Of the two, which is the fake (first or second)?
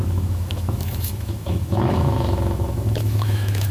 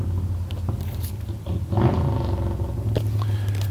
first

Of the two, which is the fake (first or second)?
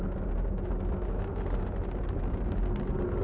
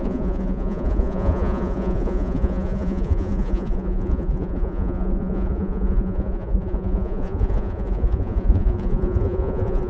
second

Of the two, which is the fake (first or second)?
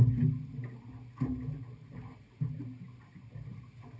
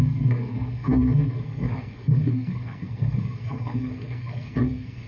second